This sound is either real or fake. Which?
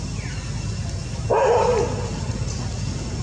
real